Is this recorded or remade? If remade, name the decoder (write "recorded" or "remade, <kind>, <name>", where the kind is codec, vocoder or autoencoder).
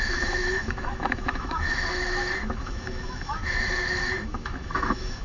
remade, autoencoder, DAC-VAE